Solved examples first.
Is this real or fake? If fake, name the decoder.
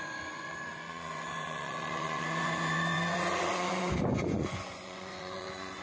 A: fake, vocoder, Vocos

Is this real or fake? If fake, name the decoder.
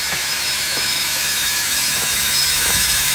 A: fake, autoencoder, DAC-VAE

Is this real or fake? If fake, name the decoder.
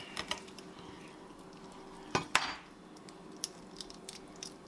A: real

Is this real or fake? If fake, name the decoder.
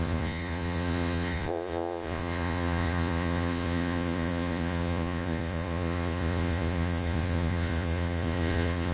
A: fake, vocoder, Vocos